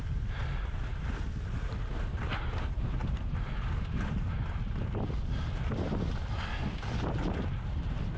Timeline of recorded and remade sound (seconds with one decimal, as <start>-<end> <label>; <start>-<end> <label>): 0.0-0.9 recorded; 0.9-2.3 remade; 2.3-8.2 recorded